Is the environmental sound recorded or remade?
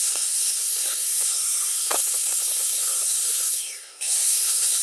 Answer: remade